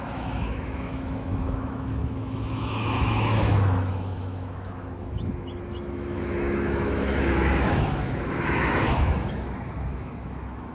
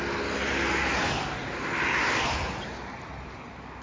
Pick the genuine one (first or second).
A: second